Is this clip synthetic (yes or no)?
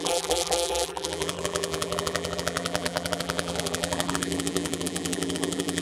yes